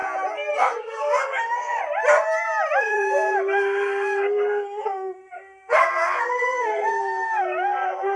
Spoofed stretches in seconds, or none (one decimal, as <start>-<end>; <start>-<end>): 0.5-1.8; 2.8-8.2